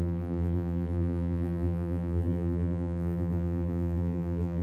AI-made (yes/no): yes